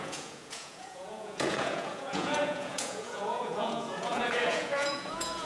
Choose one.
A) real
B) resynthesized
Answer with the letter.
B